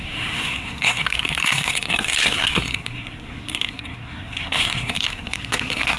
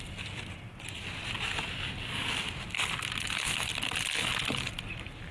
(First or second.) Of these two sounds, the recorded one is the second